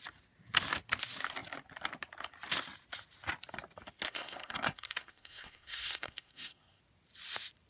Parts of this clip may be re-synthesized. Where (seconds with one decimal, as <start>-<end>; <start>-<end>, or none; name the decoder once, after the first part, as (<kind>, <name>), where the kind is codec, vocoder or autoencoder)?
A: 4.1-6.8 (codec, SNAC)